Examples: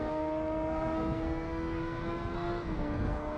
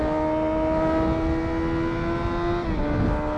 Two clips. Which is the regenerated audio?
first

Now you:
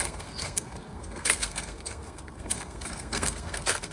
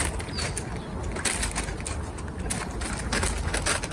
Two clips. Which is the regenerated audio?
first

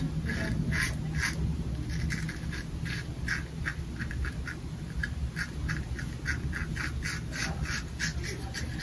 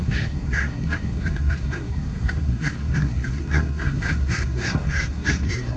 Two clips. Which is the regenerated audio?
second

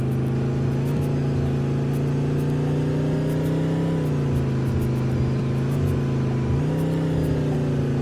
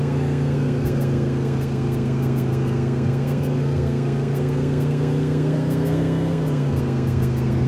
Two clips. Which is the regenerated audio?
second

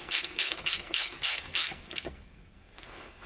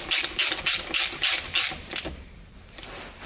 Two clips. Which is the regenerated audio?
first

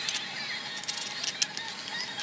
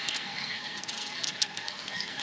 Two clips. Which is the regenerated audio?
second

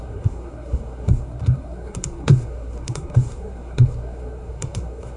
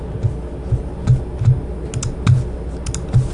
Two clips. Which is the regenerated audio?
first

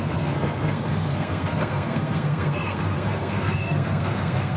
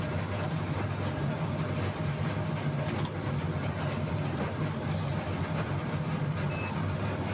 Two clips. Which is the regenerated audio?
first